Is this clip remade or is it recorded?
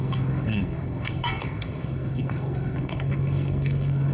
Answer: remade